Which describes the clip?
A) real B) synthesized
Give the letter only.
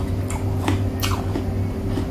A